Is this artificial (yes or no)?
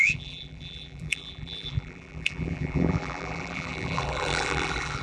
yes